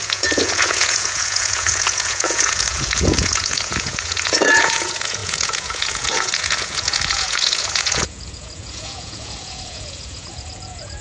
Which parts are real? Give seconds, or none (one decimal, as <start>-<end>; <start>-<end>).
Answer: none